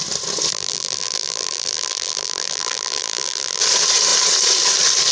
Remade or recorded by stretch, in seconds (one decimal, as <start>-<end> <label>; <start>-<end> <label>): 0.0-0.5 recorded; 0.5-3.6 remade; 3.6-5.1 recorded